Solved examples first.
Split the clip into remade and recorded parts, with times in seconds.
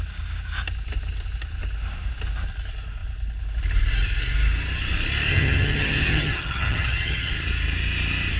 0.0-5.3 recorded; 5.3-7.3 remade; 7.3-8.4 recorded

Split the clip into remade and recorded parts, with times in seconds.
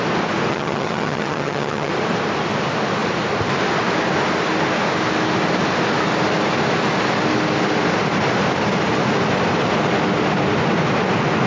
0.0-0.5 recorded; 0.5-1.9 remade; 1.9-11.5 recorded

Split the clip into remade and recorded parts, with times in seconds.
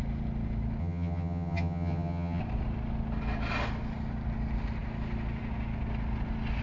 0.0-0.8 recorded; 0.8-2.4 remade; 2.4-6.6 recorded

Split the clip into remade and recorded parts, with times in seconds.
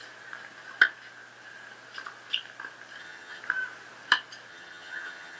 0.0-3.0 recorded; 3.0-3.4 remade; 3.4-4.5 recorded; 4.5-5.4 remade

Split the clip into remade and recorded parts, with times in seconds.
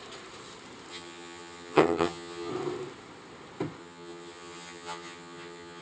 0.0-0.9 recorded; 0.9-2.5 remade; 2.5-3.8 recorded; 3.8-5.8 remade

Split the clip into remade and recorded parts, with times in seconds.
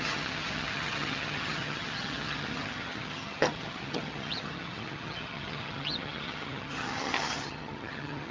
0.0-8.3 remade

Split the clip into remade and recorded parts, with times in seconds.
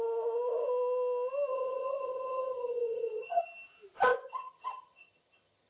0.0-1.5 recorded; 1.5-3.4 remade; 3.4-4.1 recorded; 4.1-5.7 remade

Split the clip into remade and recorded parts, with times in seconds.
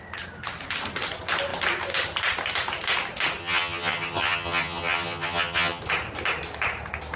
0.0-3.4 recorded; 3.4-5.8 remade; 5.8-7.2 recorded